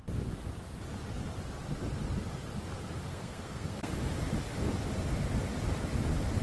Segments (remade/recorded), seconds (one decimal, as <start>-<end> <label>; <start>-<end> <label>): 0.0-3.1 recorded; 3.1-3.9 remade; 3.9-6.4 recorded